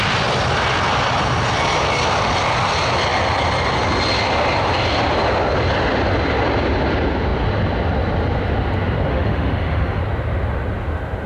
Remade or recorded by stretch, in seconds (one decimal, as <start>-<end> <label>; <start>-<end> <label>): 0.0-9.1 recorded; 9.1-10.0 remade; 10.0-11.3 recorded